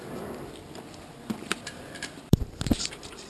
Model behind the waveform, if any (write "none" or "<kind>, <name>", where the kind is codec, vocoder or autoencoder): vocoder, BigVGAN v2